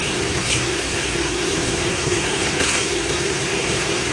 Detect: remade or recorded remade